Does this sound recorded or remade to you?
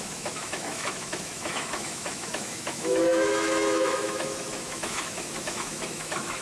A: remade